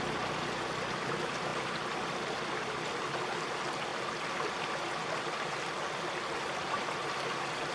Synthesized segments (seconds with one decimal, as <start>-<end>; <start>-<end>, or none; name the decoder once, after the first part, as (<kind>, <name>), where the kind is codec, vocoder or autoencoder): none

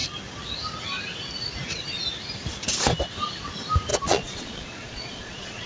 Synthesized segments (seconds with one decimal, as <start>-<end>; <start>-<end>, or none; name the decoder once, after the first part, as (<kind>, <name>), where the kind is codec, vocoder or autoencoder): 3.9-5.7 (vocoder, Vocos)

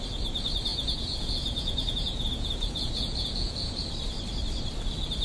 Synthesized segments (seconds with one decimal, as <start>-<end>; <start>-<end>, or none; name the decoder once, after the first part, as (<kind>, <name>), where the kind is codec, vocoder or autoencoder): 0.7-3.8 (vocoder, Vocos)

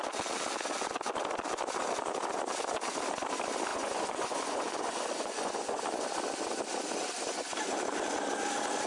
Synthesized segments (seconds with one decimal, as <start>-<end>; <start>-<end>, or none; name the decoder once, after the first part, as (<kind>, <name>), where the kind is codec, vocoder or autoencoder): 3.7-5.8 (vocoder, Vocos)

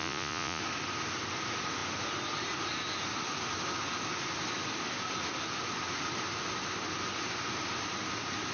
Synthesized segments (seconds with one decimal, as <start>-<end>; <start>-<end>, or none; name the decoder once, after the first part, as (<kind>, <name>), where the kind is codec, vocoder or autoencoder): 0.0-0.6 (vocoder, Vocos)

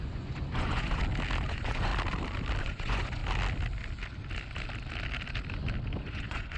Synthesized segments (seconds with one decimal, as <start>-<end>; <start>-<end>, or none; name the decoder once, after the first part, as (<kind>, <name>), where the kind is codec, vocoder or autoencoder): 0.0-1.0 (vocoder, Vocos); 1.5-1.9; 2.6-3.2; 6.0-6.6